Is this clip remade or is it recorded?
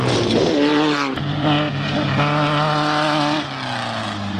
recorded